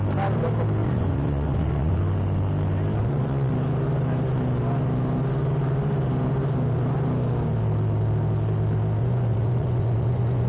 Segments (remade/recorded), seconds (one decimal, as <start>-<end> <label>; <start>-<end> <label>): 0.0-0.8 recorded; 0.8-2.0 remade; 2.0-3.0 recorded; 3.0-3.5 remade; 3.5-9.0 recorded; 9.0-10.5 remade